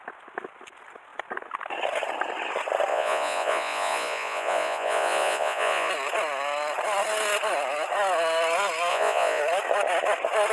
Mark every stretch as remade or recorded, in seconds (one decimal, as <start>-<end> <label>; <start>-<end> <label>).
0.0-2.9 recorded; 2.9-5.9 remade; 5.9-8.9 recorded; 8.9-9.4 remade; 9.4-10.5 recorded